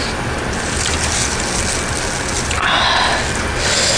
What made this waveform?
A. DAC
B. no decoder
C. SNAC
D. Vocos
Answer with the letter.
B